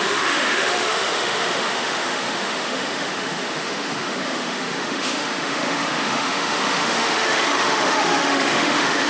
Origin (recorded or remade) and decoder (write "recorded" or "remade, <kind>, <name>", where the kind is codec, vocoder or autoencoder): remade, autoencoder, DAC-VAE